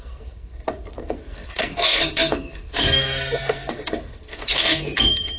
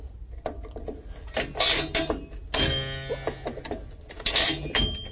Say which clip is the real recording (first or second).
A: second